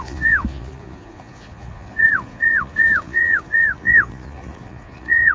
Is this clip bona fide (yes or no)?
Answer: no